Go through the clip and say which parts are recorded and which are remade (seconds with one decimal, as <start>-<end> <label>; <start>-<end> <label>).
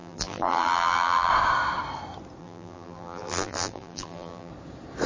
0.0-1.3 remade; 1.3-2.4 recorded; 2.4-4.5 remade; 4.5-5.1 recorded